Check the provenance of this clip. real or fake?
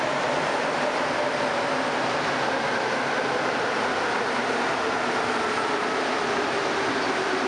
real